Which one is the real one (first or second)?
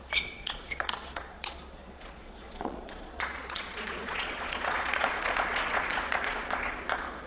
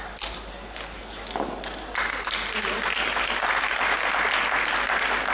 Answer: second